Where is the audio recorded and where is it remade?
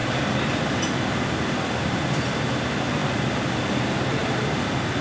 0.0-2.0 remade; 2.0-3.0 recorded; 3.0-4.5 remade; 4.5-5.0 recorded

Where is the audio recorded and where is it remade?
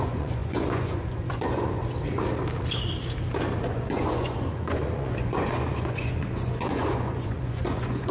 0.0-1.8 remade; 1.8-3.6 recorded; 3.6-8.1 remade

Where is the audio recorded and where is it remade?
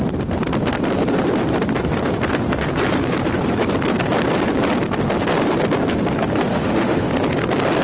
0.0-6.5 recorded; 6.5-7.1 remade; 7.1-7.8 recorded